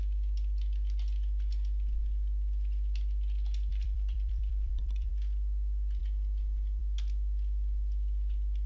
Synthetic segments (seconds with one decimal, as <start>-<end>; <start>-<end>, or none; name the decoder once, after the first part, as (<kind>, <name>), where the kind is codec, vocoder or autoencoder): 3.7-5.1 (vocoder, BigVGAN v2)